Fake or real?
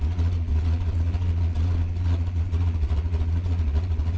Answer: fake